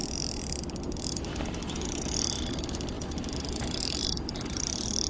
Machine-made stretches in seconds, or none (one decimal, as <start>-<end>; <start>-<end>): none